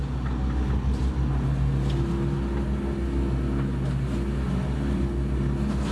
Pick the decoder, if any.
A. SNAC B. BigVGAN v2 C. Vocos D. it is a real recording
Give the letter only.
D